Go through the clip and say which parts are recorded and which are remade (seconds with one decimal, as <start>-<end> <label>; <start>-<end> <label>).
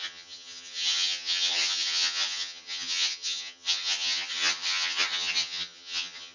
0.0-6.3 remade